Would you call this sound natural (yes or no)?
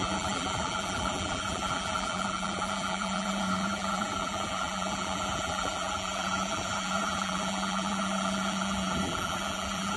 no